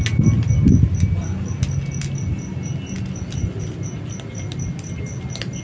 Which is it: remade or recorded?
recorded